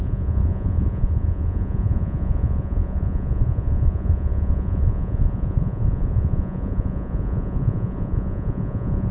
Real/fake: fake